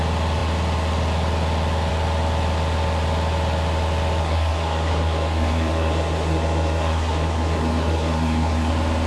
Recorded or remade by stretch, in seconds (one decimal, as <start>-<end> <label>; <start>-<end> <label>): 0.0-4.2 recorded; 4.2-8.7 remade; 8.7-9.1 recorded